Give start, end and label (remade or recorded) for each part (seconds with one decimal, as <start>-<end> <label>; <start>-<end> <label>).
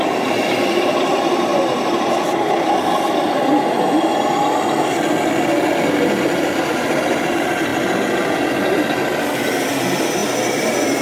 0.0-1.5 remade; 1.5-5.8 recorded; 5.8-7.7 remade; 7.7-9.7 recorded; 9.7-11.0 remade